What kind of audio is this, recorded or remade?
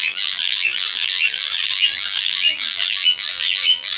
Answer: remade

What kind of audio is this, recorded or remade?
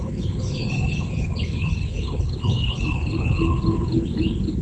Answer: remade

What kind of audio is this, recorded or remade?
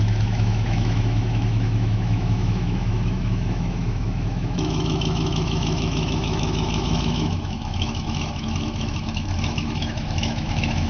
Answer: remade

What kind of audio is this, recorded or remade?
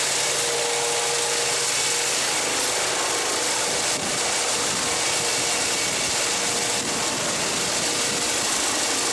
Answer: recorded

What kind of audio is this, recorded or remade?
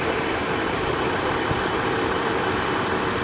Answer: recorded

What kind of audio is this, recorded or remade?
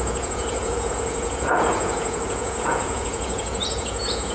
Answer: remade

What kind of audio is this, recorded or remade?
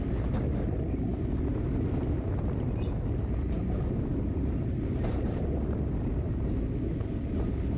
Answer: recorded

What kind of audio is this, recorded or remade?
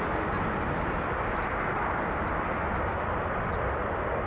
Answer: recorded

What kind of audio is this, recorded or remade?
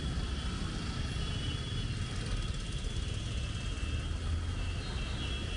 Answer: recorded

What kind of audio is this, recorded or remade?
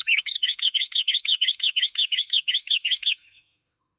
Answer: remade